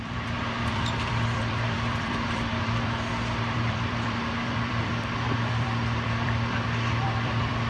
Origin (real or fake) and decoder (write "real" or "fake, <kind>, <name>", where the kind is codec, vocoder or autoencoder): fake, vocoder, BigVGAN v2